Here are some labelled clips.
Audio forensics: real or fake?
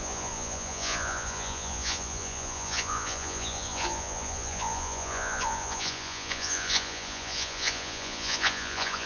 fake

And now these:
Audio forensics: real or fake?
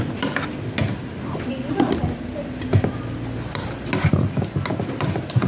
real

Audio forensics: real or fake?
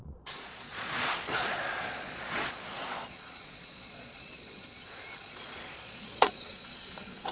fake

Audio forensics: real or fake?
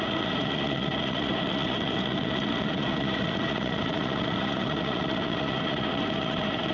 fake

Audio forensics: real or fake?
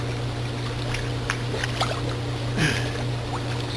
real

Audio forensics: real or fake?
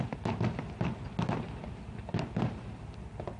real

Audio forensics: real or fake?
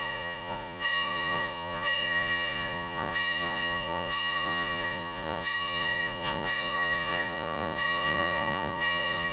fake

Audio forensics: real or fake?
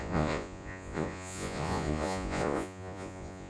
fake